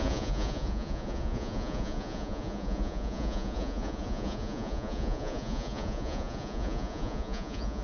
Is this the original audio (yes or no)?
no